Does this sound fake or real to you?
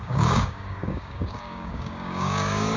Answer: fake